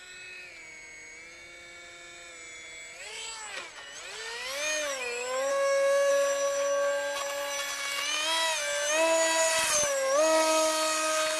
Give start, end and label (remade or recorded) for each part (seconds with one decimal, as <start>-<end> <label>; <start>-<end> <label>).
0.0-5.5 recorded; 5.5-6.1 remade; 6.1-11.4 recorded